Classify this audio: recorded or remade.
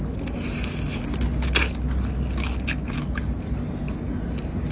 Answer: recorded